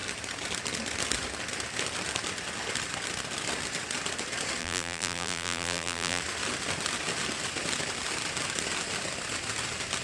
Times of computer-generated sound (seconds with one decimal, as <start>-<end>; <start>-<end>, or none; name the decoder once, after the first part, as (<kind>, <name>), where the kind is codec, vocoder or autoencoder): 4.6-6.2 (vocoder, BigVGAN v2)